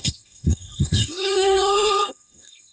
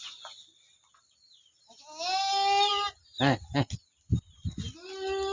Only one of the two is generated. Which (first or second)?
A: first